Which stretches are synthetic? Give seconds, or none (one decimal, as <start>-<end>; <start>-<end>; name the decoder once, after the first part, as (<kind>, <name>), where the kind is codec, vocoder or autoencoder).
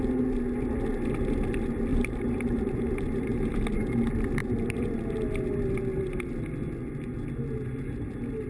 1.9-3.6 (vocoder, BigVGAN v2); 4.4-5.0